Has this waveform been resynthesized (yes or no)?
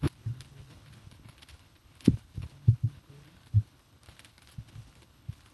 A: yes